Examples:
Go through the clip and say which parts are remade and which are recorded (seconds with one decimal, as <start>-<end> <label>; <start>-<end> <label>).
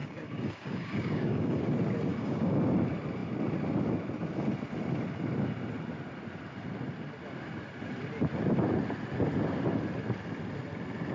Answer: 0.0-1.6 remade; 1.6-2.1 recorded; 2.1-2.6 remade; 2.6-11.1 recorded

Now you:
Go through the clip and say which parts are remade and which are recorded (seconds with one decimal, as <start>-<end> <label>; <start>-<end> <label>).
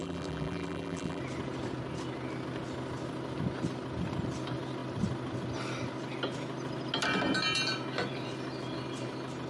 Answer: 0.0-1.2 remade; 1.2-9.5 recorded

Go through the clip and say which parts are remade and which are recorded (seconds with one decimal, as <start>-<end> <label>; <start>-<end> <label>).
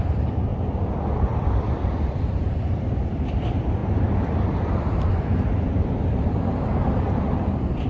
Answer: 0.0-3.8 remade; 3.8-5.5 recorded; 5.5-7.9 remade